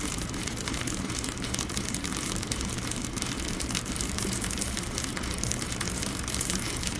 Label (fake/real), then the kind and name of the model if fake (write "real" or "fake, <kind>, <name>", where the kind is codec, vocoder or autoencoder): fake, vocoder, BigVGAN v2